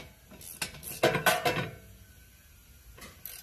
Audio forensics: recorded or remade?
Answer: recorded